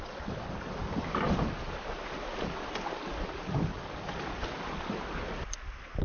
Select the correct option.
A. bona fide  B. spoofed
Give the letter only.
A